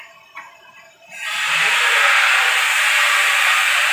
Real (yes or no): yes